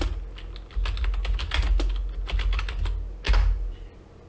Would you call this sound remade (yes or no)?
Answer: no